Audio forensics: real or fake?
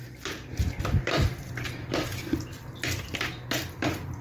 real